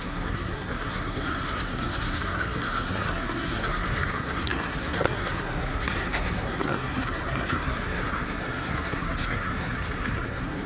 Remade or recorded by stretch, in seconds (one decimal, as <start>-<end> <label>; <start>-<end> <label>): 0.0-10.7 remade